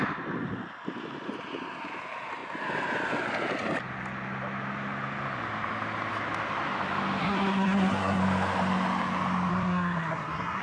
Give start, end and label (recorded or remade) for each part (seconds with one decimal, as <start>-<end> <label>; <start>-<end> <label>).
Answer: 0.0-7.2 recorded; 7.2-8.2 remade; 8.2-9.5 recorded; 9.5-10.6 remade